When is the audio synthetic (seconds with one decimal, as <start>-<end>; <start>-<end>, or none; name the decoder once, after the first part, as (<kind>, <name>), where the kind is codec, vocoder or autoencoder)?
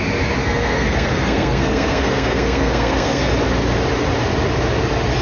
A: 0.4-3.2 (codec, SNAC)